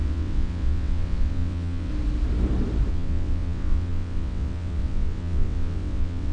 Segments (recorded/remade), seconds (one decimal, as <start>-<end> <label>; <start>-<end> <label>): 0.0-1.9 remade; 1.9-2.9 recorded; 2.9-6.3 remade